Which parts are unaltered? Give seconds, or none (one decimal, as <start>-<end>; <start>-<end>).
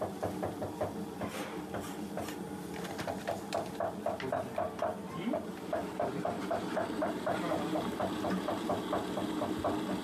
0.0-5.0; 8.5-10.0